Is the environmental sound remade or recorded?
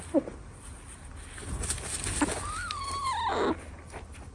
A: recorded